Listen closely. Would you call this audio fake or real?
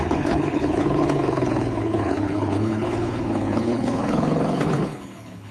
fake